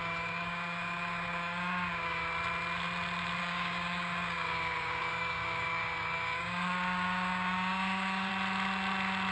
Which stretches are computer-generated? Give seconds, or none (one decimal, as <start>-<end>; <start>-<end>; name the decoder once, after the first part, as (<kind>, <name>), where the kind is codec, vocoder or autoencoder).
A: 0.0-2.3 (codec, DAC); 3.4-8.3